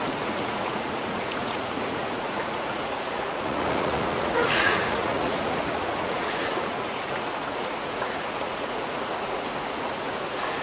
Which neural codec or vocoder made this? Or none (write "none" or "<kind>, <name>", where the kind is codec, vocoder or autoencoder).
vocoder, Vocos